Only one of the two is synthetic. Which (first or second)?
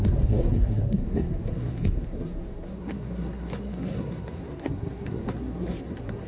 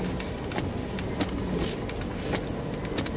first